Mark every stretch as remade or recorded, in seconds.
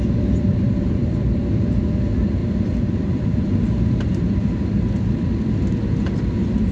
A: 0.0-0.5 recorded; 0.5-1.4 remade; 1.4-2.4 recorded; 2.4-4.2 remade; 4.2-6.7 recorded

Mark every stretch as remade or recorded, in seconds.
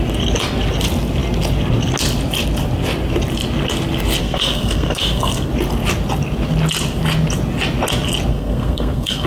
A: 0.0-4.2 recorded; 4.2-5.5 remade; 5.5-8.3 recorded; 8.3-9.3 remade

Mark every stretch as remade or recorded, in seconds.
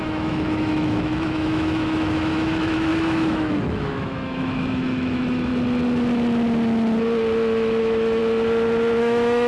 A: 0.0-5.5 remade; 5.5-7.8 recorded; 7.8-8.2 remade; 8.2-9.0 recorded; 9.0-9.5 remade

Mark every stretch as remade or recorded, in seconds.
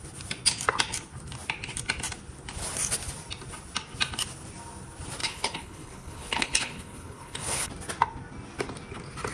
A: 0.0-5.2 recorded; 5.2-7.7 remade; 7.7-9.3 recorded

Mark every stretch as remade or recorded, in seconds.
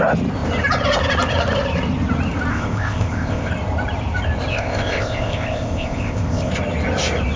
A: 0.0-2.5 recorded; 2.5-3.5 remade; 3.5-4.5 recorded; 4.5-6.5 remade; 6.5-7.4 recorded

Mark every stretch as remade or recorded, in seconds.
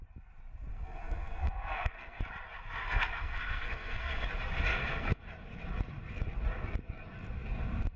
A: 0.0-0.7 recorded; 0.7-2.2 remade; 2.2-2.8 recorded; 2.8-4.3 remade; 4.3-4.7 recorded; 4.7-5.2 remade; 5.2-8.0 recorded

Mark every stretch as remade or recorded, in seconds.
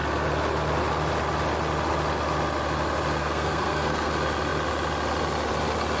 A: 0.0-3.2 recorded; 3.2-4.1 remade; 4.1-6.0 recorded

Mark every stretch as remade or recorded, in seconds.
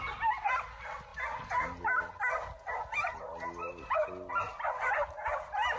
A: 0.0-5.8 recorded